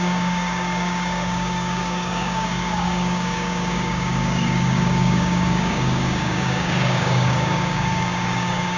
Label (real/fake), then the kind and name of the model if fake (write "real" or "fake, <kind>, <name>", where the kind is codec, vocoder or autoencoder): fake, codec, DAC